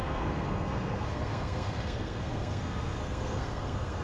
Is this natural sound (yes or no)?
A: no